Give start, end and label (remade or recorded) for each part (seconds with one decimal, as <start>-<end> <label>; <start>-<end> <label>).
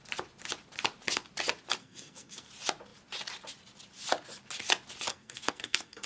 0.0-1.8 recorded; 1.8-2.5 remade; 2.5-5.1 recorded; 5.1-6.1 remade